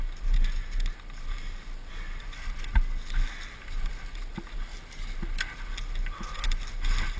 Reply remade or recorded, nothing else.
recorded